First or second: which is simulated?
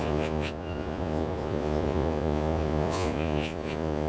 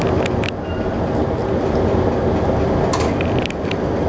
first